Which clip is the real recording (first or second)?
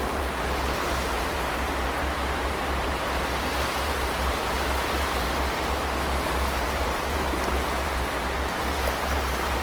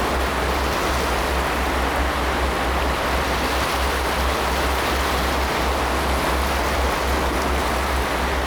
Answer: second